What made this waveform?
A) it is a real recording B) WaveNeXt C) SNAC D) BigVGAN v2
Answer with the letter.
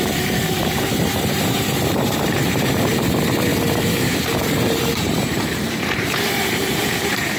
D